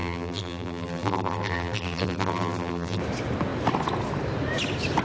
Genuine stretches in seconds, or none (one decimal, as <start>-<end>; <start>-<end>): 3.0-5.0